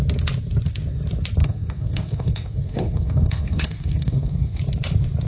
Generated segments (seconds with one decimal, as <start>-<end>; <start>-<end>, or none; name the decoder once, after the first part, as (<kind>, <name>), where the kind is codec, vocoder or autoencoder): 1.4-4.6 (codec, SNAC)